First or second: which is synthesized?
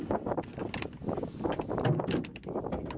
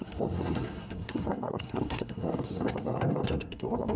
second